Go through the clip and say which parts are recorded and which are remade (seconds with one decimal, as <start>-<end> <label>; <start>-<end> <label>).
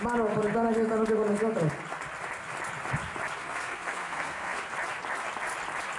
0.0-3.4 recorded; 3.4-4.6 remade; 4.6-6.0 recorded